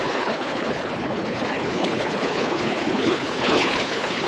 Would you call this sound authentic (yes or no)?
no